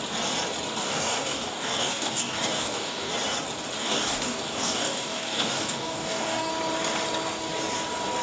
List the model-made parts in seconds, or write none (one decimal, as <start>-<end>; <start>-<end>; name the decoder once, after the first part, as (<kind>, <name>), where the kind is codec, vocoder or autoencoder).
0.8-3.1 (codec, DAC); 3.8-6.5